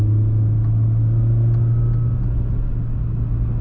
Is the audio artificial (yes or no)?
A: no